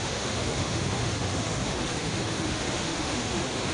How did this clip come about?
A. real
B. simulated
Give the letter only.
B